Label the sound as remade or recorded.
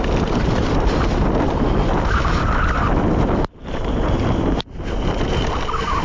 recorded